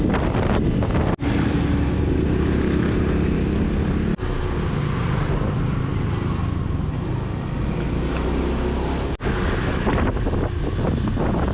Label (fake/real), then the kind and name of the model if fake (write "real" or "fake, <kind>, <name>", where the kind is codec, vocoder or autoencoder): real